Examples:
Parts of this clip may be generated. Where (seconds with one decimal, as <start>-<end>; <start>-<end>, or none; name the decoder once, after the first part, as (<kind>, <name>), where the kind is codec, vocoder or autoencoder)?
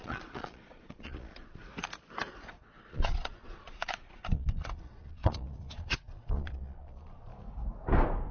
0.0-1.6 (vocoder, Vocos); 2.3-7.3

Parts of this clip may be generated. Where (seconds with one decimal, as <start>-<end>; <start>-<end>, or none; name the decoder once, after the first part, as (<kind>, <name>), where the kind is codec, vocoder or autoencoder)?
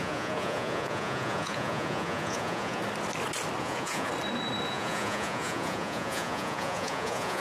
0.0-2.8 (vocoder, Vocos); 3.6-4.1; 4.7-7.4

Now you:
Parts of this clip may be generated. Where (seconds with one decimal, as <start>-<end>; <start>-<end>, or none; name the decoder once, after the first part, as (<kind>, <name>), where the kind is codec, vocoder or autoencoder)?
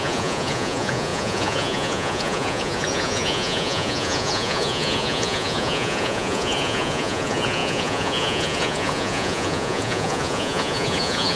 0.0-11.4 (vocoder, Vocos)